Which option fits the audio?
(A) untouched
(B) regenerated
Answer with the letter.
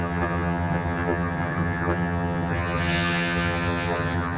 B